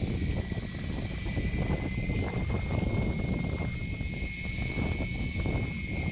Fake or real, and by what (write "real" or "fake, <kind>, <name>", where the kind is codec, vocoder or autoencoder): real